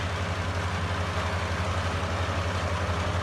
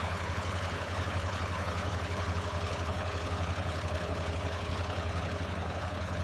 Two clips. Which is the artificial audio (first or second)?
second